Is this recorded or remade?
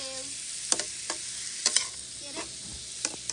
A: recorded